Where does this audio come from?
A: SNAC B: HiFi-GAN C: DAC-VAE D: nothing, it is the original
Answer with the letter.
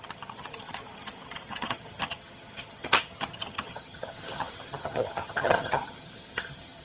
B